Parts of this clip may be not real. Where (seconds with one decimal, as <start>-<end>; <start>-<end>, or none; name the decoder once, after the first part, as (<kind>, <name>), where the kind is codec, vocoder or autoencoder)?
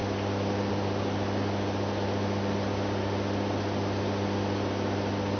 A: none